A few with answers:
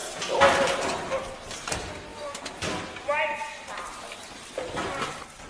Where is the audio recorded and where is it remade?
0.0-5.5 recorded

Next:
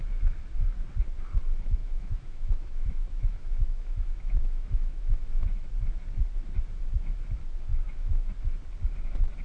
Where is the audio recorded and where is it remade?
0.0-1.8 recorded; 1.8-5.2 remade; 5.2-7.7 recorded; 7.7-8.3 remade; 8.3-9.4 recorded

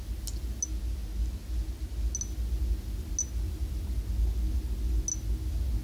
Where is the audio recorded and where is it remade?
0.0-5.8 recorded

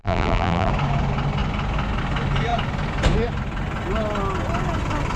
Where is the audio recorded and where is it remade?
0.0-0.7 remade; 0.7-5.2 recorded